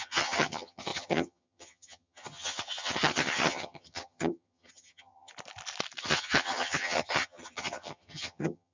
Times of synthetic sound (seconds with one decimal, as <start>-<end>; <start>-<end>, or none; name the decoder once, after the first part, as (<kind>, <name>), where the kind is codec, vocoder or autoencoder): 0.0-5.3 (vocoder, HiFi-GAN); 6.0-8.7